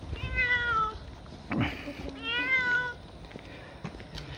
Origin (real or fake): real